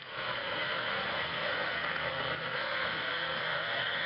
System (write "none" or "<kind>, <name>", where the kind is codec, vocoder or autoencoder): codec, SNAC